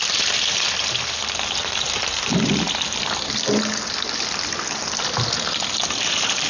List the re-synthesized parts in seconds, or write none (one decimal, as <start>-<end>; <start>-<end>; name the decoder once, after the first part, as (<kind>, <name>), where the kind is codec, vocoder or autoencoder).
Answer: none